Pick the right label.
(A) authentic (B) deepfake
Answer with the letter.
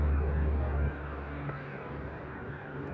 B